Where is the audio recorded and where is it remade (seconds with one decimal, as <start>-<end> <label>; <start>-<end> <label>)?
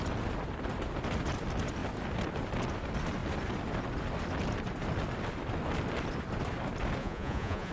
0.0-7.0 recorded; 7.0-7.7 remade